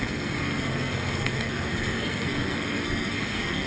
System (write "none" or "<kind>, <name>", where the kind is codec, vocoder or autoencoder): codec, SNAC